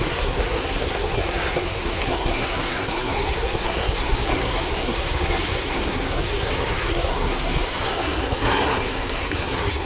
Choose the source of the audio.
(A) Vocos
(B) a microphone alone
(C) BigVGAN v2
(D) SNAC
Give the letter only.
D